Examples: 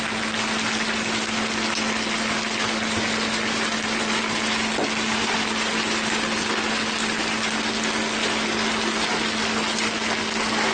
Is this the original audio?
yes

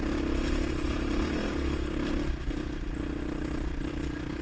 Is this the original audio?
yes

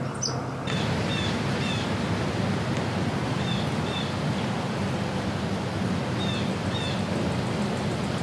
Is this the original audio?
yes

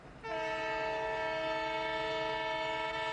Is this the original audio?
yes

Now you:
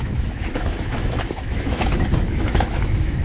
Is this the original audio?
no